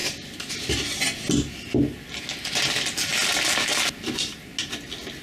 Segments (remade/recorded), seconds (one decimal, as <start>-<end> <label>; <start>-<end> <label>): 0.0-0.9 remade; 0.9-4.0 recorded; 4.0-4.5 remade; 4.5-5.2 recorded